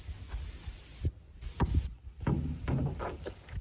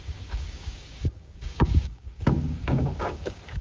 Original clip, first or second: first